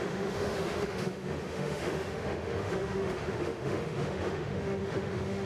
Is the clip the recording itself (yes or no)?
no